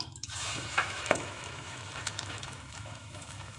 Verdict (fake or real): fake